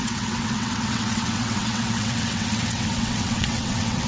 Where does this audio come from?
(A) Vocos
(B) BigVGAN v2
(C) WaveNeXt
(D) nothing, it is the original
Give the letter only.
C